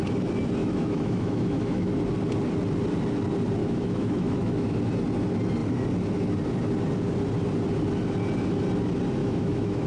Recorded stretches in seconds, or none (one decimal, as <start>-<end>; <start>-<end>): 0.0-0.6; 1.9-3.6; 4.8-9.2